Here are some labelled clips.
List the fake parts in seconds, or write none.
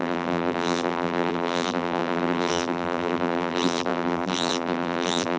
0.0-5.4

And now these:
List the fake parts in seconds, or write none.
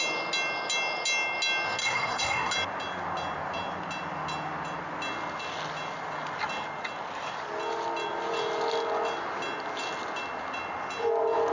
1.8-2.5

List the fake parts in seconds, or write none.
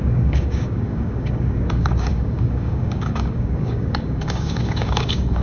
0.0-5.4